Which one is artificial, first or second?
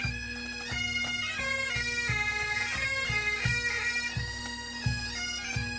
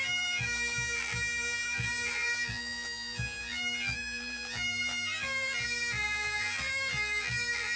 second